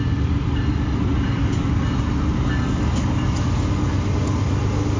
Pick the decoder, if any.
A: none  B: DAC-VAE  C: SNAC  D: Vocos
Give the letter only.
A